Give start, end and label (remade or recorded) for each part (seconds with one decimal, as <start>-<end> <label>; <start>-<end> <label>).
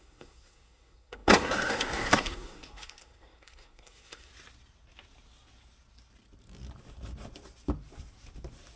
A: 0.0-4.3 remade; 4.3-8.8 recorded